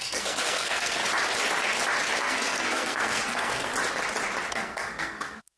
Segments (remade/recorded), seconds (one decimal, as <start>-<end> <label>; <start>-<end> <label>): 0.0-1.0 remade; 1.0-2.2 recorded; 2.2-3.7 remade; 3.7-4.5 recorded; 4.5-5.6 remade